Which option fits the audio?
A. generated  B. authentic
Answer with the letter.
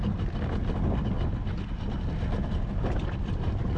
B